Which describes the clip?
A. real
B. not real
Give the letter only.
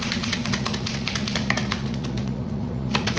B